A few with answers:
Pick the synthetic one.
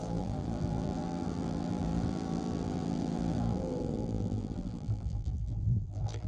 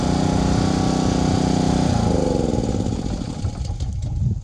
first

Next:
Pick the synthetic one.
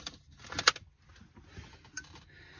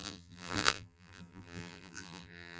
second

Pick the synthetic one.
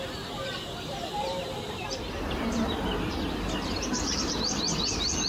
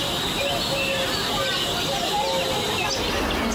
first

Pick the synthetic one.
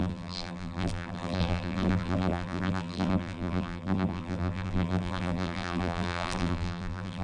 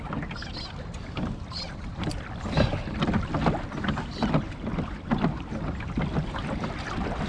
first